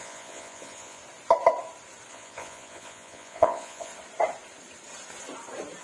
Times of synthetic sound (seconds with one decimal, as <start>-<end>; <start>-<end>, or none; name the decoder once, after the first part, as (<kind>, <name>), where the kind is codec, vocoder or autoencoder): 0.0-1.0 (vocoder, Vocos); 2.1-3.9